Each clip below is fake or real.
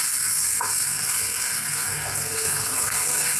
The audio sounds fake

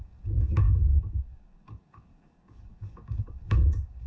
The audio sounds fake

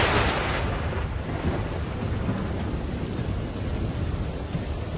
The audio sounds real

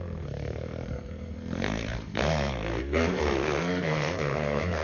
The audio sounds fake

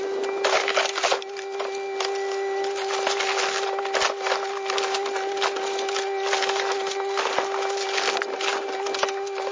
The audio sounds real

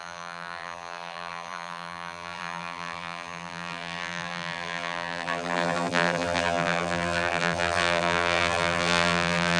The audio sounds fake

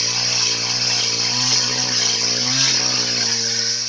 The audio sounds real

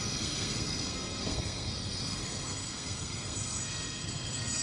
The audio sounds fake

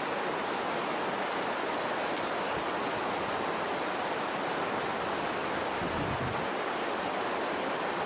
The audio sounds real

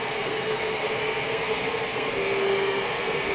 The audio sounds fake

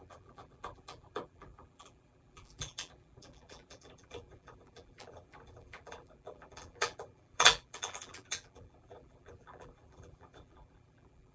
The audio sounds fake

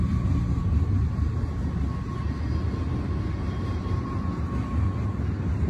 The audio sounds real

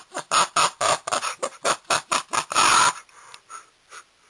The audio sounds real